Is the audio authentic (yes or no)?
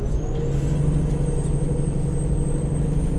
yes